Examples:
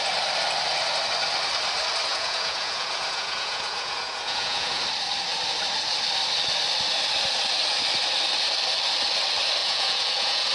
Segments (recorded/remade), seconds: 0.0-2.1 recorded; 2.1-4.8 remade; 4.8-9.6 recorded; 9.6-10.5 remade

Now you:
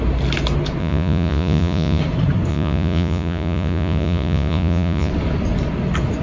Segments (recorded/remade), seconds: 0.0-0.8 recorded; 0.8-2.0 remade; 2.0-2.5 recorded; 2.5-5.1 remade; 5.1-6.2 recorded

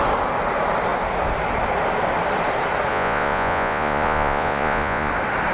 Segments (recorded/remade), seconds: 0.0-2.9 recorded; 2.9-5.1 remade; 5.1-5.5 recorded

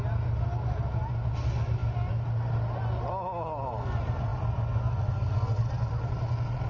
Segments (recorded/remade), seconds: 0.0-6.7 recorded

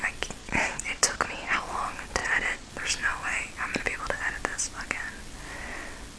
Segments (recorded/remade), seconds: 0.0-0.4 recorded; 0.4-1.6 remade; 1.6-2.2 recorded; 2.2-2.7 remade; 2.7-6.2 recorded

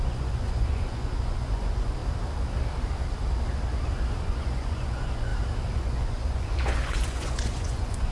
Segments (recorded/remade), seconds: 0.0-2.0 remade; 2.0-4.2 recorded; 4.2-5.3 remade; 5.3-5.8 recorded; 5.8-8.1 remade